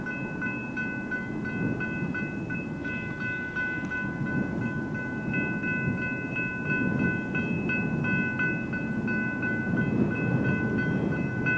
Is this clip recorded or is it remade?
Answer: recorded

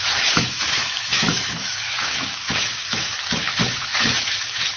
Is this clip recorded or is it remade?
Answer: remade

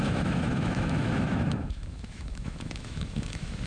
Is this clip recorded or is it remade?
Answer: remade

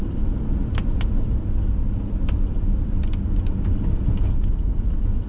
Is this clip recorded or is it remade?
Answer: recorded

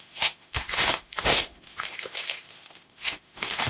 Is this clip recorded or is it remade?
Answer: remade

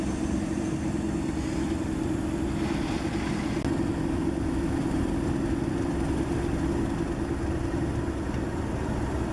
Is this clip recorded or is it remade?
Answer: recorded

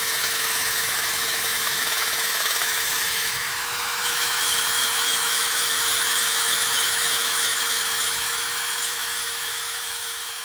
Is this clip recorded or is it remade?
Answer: remade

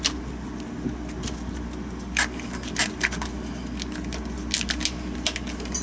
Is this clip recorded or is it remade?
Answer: recorded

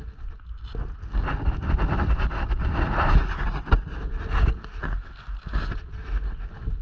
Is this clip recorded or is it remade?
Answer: recorded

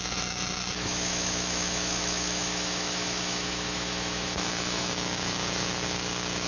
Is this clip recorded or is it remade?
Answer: remade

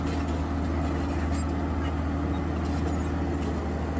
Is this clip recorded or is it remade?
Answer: recorded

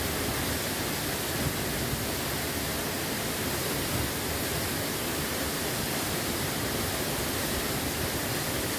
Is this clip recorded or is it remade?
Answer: recorded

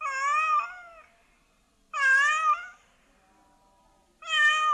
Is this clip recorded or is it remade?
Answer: recorded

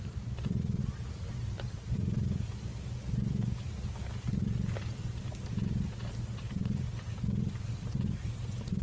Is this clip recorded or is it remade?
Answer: recorded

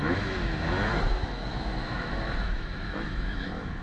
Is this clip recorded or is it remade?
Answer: remade